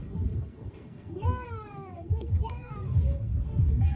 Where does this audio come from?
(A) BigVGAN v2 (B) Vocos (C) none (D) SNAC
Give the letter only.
D